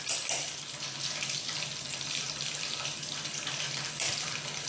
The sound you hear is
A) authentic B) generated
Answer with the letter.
A